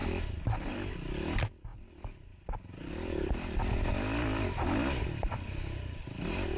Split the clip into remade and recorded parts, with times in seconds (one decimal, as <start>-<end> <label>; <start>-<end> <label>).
0.0-6.6 remade